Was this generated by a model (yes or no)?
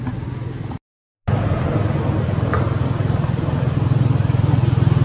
no